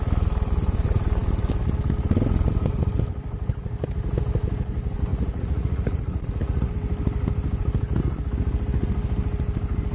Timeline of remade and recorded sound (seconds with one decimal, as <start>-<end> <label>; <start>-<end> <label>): 0.0-5.1 recorded; 5.1-6.7 remade; 6.7-9.9 recorded